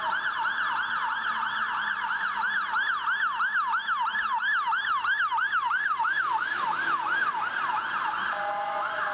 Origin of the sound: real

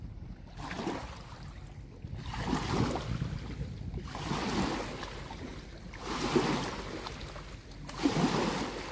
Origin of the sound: real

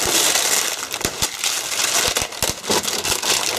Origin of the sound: real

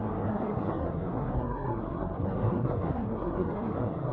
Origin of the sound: fake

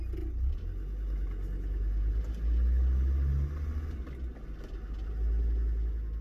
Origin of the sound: real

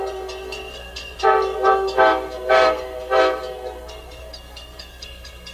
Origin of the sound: fake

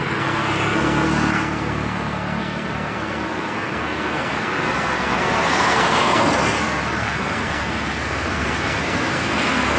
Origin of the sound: fake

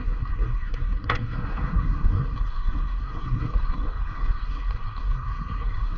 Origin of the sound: fake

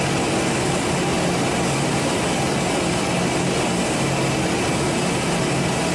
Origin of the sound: real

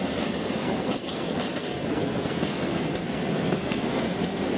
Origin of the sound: fake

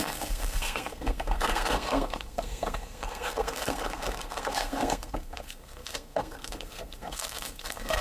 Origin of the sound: fake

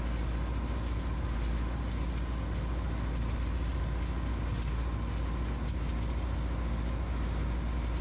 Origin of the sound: real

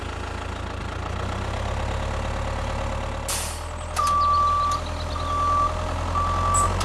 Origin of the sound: real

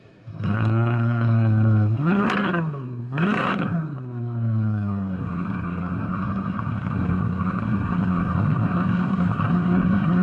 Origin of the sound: fake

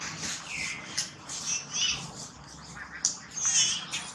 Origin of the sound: real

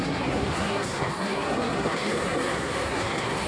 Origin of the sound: fake